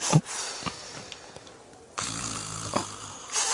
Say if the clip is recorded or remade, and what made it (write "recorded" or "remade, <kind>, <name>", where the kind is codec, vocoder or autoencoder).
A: recorded